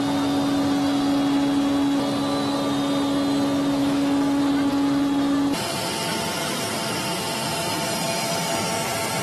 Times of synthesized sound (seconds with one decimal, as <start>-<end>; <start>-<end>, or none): 3.8-4.4